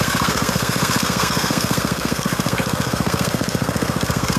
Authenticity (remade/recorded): remade